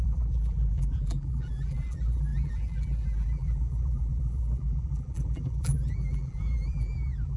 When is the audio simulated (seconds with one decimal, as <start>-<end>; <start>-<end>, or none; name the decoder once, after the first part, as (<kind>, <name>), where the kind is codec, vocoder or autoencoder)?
0.0-7.4 (vocoder, BigVGAN v2)